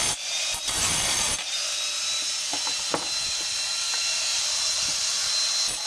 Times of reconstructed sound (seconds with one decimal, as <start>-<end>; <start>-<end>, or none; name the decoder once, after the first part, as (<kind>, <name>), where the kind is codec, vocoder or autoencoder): 0.4-1.6 (vocoder, BigVGAN v2); 4.3-5.3